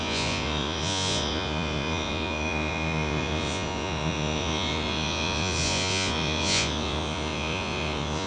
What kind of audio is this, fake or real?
fake